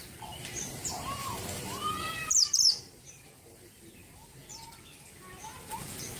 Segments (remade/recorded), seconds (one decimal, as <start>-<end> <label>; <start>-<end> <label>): 0.0-1.2 recorded; 1.2-4.9 remade; 4.9-6.2 recorded